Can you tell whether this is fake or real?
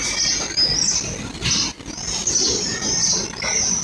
real